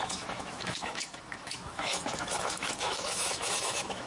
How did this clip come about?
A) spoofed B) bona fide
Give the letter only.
A